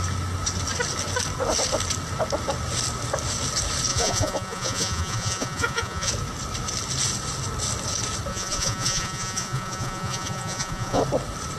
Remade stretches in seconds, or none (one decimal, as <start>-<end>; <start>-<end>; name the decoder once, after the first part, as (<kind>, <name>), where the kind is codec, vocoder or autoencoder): 3.9-6.1 (vocoder, Vocos); 8.3-11.0